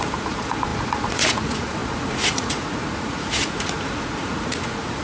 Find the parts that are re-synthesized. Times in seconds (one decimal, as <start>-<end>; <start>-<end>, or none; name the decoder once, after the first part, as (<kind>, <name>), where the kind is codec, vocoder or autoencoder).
0.0-5.0 (vocoder, Vocos)